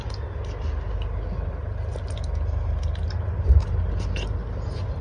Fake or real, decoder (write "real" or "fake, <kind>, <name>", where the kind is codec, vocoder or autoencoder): real